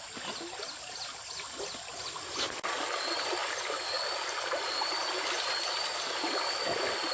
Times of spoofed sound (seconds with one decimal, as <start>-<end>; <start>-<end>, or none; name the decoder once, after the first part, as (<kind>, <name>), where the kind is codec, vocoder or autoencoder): none